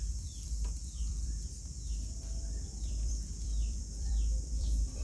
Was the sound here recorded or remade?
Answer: remade